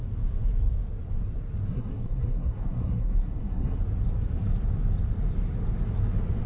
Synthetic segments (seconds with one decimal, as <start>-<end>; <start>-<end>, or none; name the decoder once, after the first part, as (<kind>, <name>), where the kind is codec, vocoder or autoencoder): 1.7-3.8 (codec, SNAC)